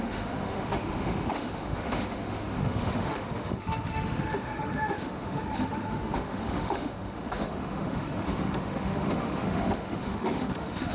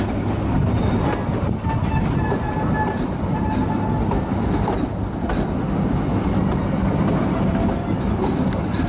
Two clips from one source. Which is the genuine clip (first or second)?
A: second